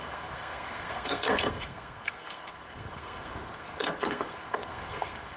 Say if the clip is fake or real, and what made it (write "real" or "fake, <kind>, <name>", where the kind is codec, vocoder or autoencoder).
fake, codec, SNAC